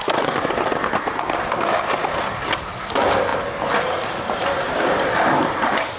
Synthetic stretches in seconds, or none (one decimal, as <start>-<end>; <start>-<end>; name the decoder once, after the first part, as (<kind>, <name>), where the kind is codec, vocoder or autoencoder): none